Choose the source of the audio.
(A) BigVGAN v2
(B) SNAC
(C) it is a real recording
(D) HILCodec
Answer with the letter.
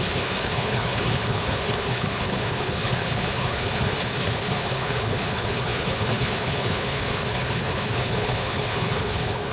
D